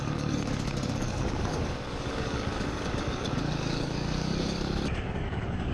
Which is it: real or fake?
fake